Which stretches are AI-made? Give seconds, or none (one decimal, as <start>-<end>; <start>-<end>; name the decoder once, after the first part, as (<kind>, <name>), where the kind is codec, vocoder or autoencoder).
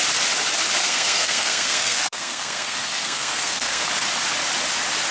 0.8-3.9 (codec, SNAC)